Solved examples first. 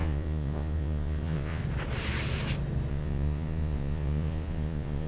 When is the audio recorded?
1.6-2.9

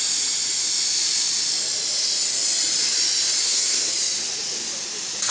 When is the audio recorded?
0.0-3.4; 3.9-5.3

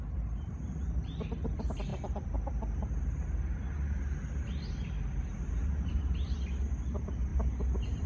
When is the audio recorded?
0.0-8.1

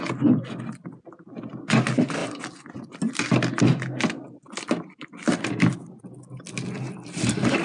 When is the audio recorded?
0.0-7.6

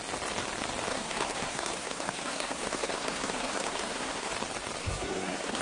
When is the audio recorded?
0.0-0.9; 4.3-4.8

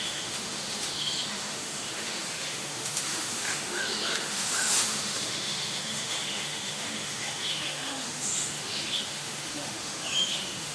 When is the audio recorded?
none